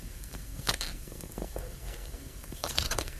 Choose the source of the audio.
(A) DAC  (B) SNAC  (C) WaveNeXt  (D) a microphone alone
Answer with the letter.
B